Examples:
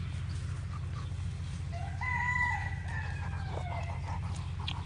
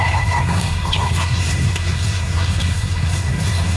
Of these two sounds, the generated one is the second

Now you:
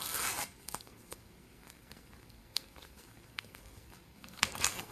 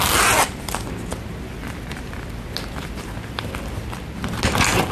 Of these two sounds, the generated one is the first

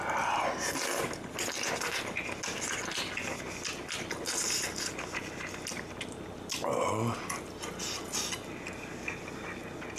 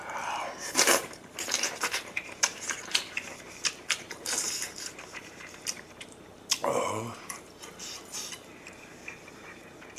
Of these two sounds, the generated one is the second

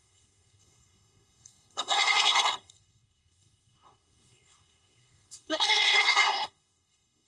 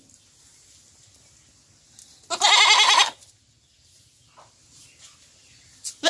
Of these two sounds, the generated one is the first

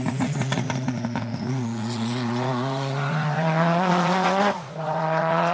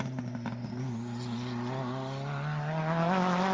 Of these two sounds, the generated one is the first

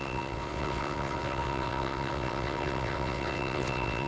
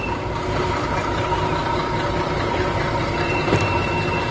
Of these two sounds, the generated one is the first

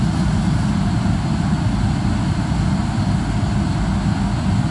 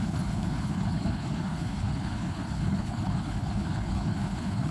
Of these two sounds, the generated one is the second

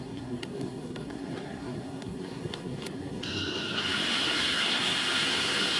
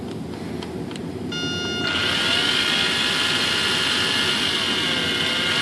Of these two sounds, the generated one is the first